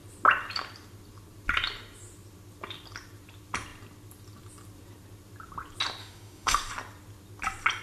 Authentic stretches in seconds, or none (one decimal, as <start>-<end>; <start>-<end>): 0.0-6.0; 6.7-7.8